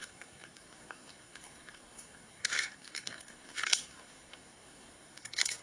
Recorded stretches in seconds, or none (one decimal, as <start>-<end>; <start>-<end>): none